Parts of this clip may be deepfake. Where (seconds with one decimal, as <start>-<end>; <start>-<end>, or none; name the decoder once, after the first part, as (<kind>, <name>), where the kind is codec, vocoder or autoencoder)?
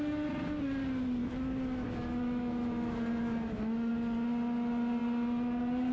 1.2-3.9 (autoencoder, DAC-VAE)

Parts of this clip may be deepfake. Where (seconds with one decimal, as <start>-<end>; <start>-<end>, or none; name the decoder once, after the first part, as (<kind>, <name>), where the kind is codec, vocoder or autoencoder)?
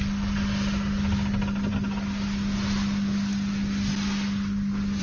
none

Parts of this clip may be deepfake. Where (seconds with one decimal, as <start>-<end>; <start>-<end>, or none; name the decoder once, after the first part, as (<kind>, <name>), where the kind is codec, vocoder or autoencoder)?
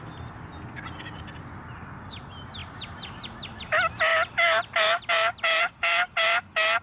none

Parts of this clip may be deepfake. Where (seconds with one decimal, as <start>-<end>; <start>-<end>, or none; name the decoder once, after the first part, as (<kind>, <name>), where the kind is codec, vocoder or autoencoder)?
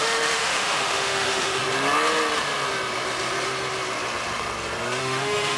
0.0-1.6 (autoencoder, DAC-VAE); 5.0-5.6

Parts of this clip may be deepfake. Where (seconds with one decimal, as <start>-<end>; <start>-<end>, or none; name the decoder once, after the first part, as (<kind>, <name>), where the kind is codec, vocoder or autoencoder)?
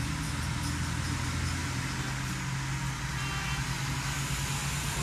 none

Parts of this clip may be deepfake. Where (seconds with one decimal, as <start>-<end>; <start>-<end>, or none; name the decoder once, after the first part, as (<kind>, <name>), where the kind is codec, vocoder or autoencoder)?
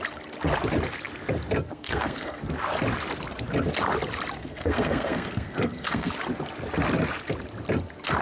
1.7-2.4 (codec, SNAC); 4.4-6.1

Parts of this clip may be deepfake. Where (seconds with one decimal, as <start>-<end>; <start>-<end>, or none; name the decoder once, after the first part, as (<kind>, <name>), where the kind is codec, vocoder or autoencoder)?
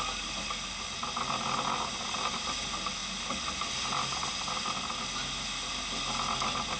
none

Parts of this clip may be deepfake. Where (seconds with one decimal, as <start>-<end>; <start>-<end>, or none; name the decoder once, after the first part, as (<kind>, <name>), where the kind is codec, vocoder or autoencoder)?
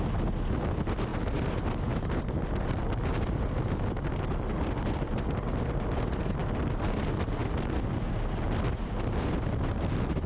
none